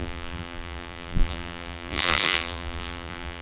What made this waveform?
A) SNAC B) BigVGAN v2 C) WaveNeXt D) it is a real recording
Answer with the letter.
B